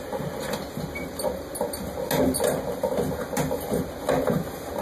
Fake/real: real